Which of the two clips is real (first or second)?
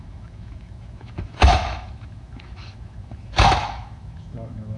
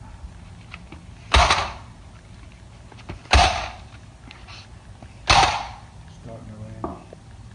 second